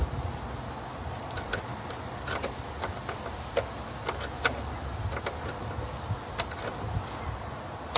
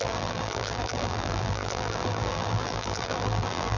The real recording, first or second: first